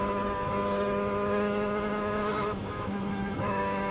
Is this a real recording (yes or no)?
no